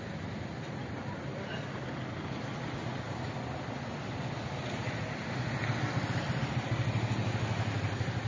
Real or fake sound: real